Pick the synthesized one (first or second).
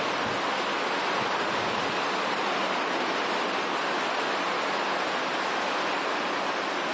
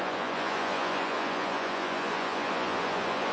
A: second